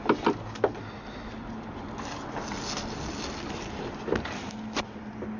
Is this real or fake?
real